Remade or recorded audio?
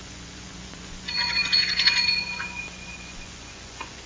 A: remade